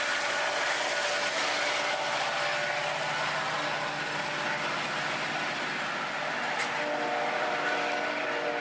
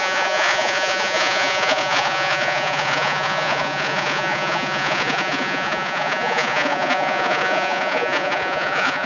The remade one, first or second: second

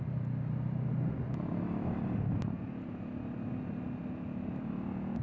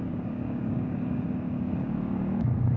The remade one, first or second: second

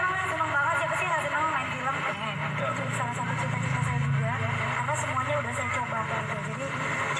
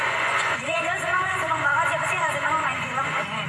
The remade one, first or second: second